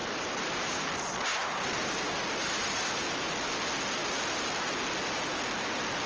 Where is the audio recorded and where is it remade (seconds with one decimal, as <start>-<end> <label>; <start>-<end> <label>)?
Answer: 0.0-0.9 remade; 0.9-1.3 recorded; 1.3-2.1 remade; 2.1-6.1 recorded